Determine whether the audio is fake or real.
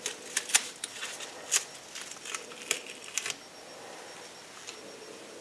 real